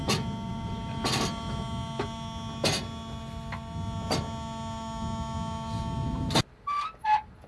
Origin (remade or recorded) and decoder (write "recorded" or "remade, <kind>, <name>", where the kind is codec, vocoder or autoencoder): recorded